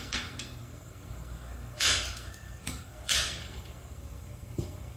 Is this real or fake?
fake